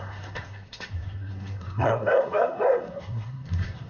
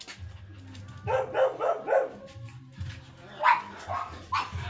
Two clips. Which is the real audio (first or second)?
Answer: second